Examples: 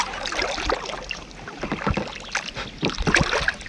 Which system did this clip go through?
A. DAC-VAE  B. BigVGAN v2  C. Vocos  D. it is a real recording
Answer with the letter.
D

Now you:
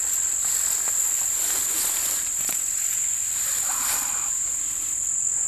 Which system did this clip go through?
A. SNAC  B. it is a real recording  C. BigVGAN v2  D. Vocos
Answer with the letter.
B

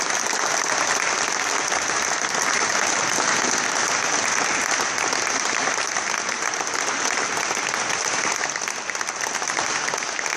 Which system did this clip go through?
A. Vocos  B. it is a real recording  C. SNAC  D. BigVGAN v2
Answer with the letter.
B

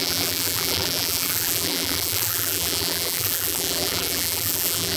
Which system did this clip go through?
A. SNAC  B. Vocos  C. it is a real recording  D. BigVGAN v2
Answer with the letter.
D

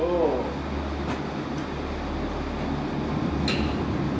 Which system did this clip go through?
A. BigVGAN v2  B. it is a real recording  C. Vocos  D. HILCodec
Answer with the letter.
B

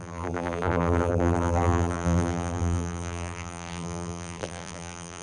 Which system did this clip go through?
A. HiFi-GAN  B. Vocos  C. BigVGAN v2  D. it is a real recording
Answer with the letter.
C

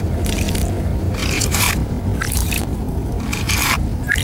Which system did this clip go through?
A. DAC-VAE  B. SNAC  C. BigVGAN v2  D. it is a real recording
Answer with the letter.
C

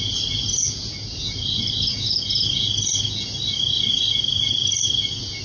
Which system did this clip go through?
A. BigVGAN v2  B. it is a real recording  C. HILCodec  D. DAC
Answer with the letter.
B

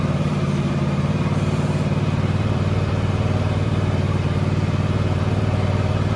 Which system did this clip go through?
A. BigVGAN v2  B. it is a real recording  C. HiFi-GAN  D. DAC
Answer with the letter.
A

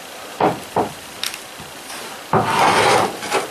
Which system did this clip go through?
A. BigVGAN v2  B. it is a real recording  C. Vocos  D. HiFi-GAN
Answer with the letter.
B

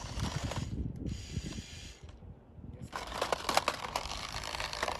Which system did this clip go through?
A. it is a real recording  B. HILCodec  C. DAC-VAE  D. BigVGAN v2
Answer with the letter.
A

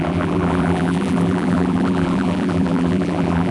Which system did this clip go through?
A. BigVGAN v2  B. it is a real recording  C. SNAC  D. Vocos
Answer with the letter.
A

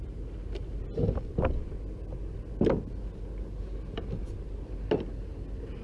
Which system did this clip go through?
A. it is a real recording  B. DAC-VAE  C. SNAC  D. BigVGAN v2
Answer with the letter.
A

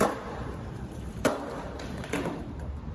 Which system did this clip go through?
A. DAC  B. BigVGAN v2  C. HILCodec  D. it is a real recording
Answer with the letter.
B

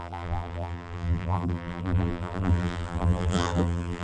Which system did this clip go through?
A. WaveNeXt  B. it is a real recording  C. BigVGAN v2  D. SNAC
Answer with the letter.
C